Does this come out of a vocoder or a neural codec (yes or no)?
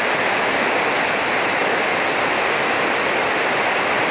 no